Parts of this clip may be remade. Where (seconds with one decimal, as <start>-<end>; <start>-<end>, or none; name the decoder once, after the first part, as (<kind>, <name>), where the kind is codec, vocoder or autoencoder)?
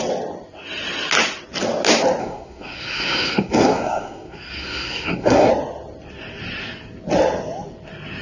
2.2-5.5 (codec, SNAC)